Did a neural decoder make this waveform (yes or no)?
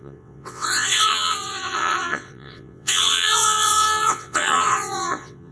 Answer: yes